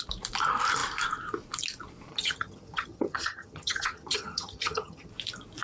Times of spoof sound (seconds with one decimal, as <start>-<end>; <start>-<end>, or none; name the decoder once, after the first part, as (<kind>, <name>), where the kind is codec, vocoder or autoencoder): 2.1-5.1 (vocoder, HiFi-GAN)